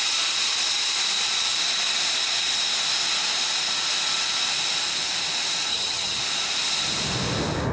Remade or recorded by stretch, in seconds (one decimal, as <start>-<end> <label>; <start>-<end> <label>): 0.0-5.7 recorded; 5.7-6.2 remade; 6.2-7.7 recorded